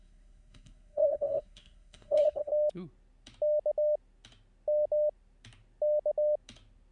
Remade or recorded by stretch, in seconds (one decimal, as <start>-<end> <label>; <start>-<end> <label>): 0.0-2.5 remade; 2.5-6.9 recorded